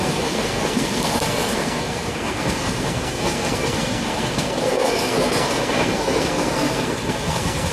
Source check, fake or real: fake